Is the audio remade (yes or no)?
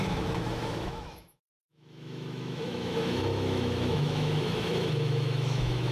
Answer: yes